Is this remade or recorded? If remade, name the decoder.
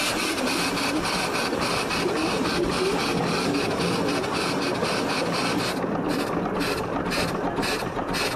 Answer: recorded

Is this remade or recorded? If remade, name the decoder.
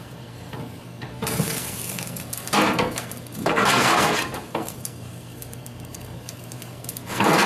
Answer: remade, codec, SNAC